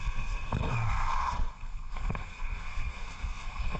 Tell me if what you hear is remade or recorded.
remade